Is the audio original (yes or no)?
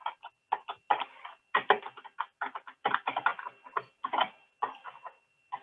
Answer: yes